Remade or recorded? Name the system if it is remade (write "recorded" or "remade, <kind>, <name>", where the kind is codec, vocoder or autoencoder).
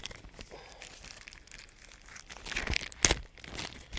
recorded